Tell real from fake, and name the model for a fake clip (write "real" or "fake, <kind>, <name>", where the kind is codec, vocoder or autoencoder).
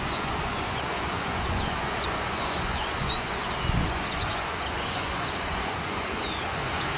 fake, vocoder, Vocos